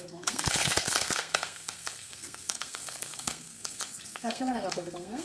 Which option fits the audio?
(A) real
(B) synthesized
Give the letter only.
B